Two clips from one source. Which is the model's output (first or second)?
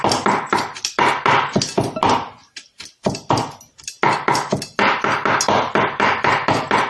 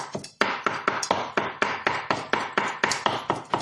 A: second